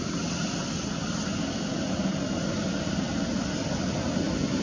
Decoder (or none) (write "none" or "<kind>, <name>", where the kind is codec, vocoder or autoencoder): none